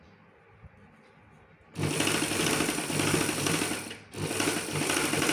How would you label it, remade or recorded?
recorded